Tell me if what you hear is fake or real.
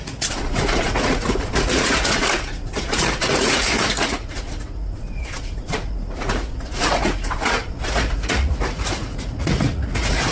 fake